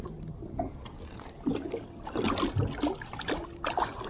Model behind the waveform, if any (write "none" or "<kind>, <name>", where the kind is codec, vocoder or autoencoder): none